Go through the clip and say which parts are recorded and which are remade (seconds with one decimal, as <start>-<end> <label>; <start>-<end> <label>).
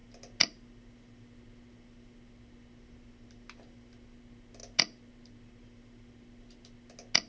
0.0-7.3 recorded